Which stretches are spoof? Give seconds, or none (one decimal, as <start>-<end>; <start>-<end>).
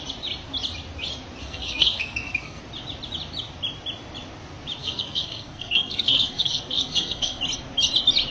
1.4-2.6; 4.8-7.4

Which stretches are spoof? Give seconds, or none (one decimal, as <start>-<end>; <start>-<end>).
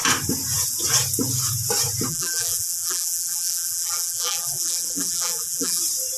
2.1-5.8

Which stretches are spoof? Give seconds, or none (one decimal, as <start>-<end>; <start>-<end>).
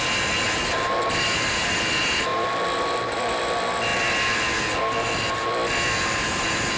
none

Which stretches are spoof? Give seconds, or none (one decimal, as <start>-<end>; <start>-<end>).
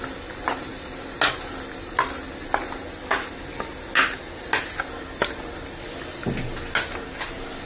none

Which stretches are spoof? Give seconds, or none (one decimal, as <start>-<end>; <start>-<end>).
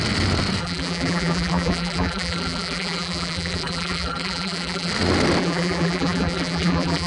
0.6-4.9; 5.4-7.1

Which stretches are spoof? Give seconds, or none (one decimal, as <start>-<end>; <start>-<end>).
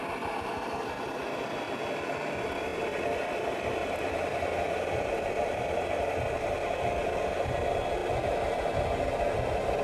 2.7-5.9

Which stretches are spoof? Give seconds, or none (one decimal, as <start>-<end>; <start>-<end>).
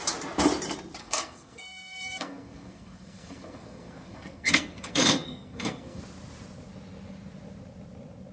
1.0-6.0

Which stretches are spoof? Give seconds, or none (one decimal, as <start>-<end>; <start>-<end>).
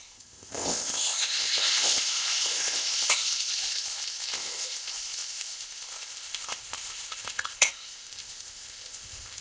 0.0-9.4